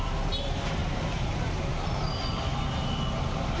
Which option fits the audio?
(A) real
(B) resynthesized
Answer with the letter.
A